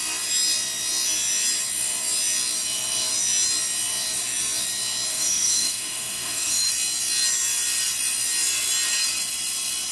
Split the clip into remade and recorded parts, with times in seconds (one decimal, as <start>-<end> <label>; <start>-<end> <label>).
0.0-5.1 recorded; 5.1-6.7 remade; 6.7-9.9 recorded